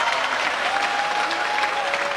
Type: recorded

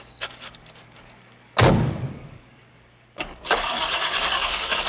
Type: remade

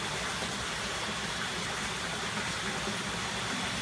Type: recorded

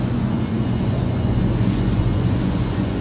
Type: remade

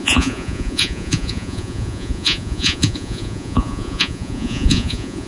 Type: remade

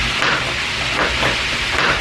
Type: recorded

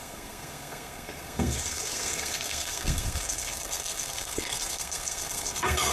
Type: remade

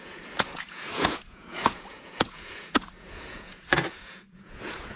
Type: remade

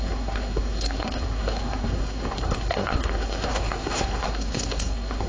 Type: remade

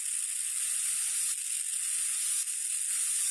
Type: recorded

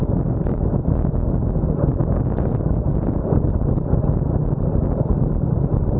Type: recorded